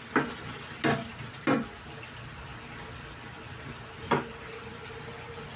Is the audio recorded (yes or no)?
yes